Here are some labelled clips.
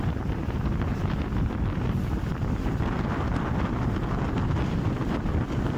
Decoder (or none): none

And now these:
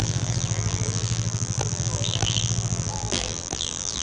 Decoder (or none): vocoder, BigVGAN v2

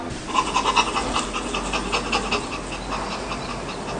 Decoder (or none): none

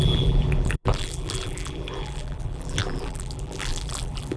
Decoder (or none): vocoder, BigVGAN v2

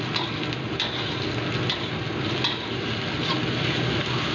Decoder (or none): none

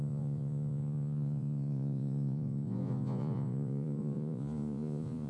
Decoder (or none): vocoder, Vocos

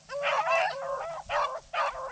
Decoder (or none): none